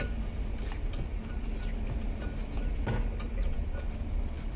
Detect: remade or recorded recorded